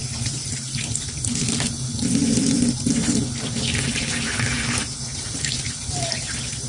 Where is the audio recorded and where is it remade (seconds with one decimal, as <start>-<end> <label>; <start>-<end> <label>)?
0.0-6.7 recorded